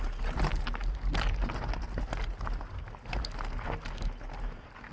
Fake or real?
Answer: real